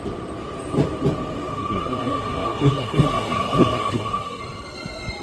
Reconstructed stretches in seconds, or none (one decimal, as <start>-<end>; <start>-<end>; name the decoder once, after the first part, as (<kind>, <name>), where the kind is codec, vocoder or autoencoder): 1.5-4.4 (codec, SNAC)